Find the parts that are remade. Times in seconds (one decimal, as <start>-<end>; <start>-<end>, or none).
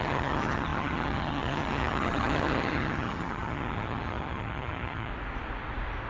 0.0-5.1